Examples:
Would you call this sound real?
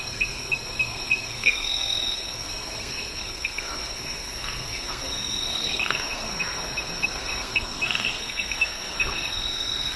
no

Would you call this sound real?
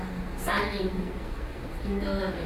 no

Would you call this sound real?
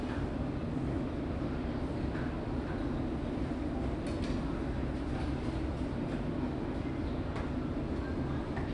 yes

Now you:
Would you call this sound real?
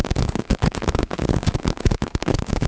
no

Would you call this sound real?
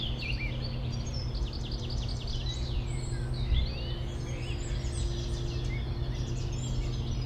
yes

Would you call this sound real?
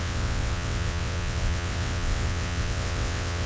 no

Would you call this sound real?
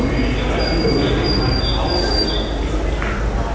yes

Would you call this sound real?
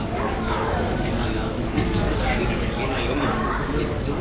no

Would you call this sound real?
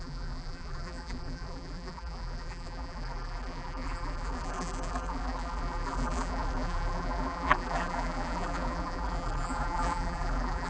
no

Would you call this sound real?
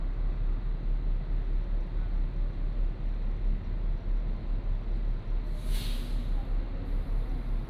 yes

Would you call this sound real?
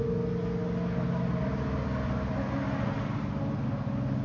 yes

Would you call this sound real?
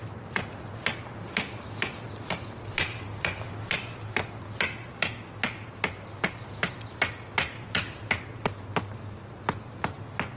yes